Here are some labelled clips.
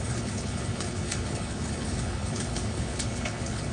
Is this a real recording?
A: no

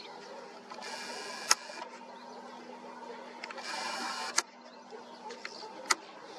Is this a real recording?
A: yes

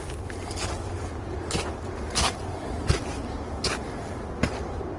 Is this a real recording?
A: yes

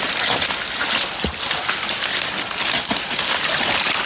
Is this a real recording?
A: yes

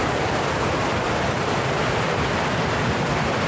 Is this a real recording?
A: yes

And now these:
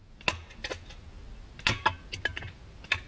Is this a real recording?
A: yes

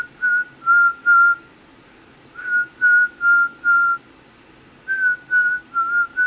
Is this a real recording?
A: yes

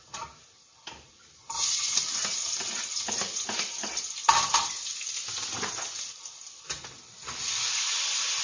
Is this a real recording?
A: yes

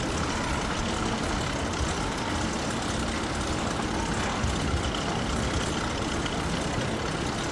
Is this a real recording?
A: yes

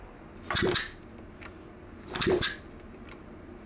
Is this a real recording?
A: yes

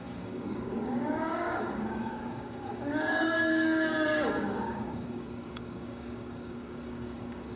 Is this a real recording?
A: no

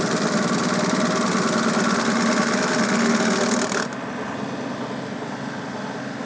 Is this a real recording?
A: yes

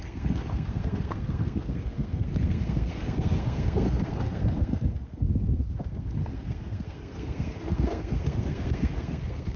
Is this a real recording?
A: no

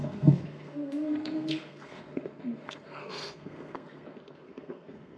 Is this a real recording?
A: no